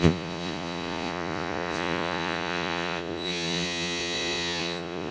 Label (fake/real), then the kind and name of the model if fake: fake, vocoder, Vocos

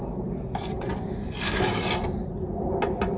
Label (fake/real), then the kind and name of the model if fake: real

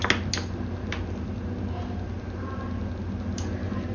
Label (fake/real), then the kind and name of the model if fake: real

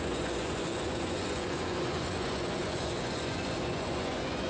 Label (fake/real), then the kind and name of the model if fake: fake, vocoder, Vocos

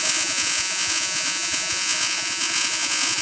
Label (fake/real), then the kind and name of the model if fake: fake, vocoder, Vocos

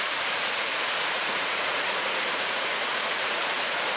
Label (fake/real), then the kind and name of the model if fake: fake, vocoder, Vocos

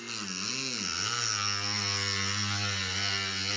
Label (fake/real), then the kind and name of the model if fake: real